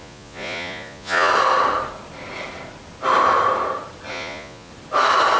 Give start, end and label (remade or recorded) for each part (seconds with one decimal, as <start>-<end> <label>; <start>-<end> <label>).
0.0-1.3 remade; 1.3-4.1 recorded; 4.1-4.7 remade; 4.7-5.4 recorded